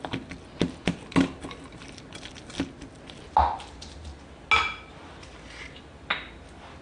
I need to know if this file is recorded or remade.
recorded